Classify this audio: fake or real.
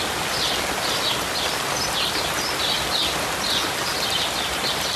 real